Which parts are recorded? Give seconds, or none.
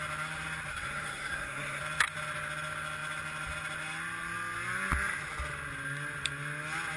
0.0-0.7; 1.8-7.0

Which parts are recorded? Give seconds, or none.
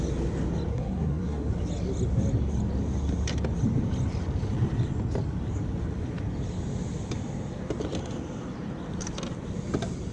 0.0-0.7; 1.5-10.1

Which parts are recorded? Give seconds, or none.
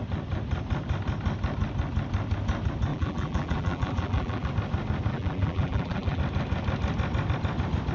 0.0-2.9; 4.5-5.1; 6.2-7.9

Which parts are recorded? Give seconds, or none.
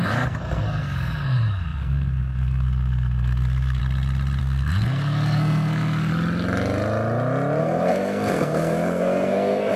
3.8-4.4; 6.1-7.6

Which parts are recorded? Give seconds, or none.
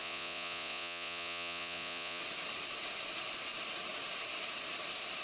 2.2-5.2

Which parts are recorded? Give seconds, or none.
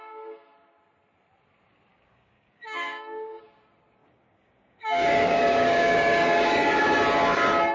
0.0-1.9; 3.4-4.0; 6.5-7.7